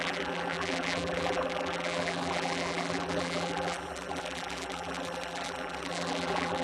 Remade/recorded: remade